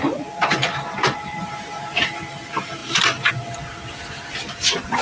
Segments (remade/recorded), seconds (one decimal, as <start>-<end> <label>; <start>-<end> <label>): 0.0-5.0 remade